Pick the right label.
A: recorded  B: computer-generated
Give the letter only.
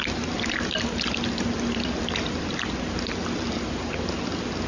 A